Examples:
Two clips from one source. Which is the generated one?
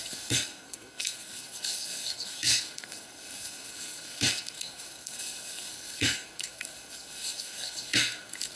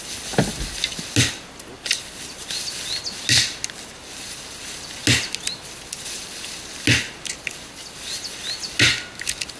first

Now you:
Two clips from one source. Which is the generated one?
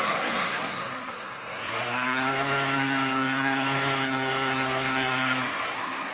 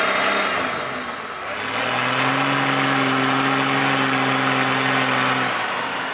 first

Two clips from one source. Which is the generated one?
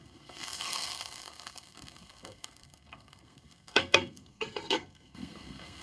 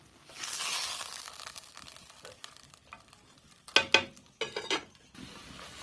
first